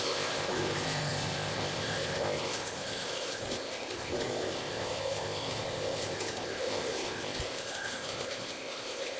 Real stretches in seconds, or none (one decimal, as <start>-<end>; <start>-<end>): none